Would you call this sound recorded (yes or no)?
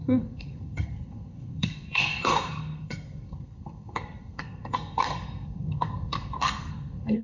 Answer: no